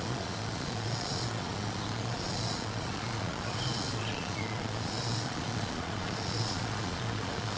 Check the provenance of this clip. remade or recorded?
remade